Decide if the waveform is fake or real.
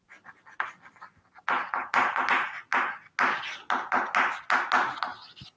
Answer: real